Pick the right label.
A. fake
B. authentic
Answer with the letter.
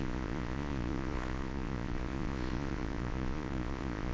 A